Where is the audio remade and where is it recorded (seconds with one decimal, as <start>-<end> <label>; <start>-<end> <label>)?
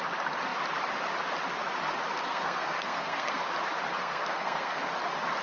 0.0-2.1 recorded; 2.1-3.4 remade; 3.4-4.0 recorded; 4.0-4.9 remade; 4.9-5.4 recorded